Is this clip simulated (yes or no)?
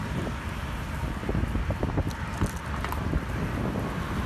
no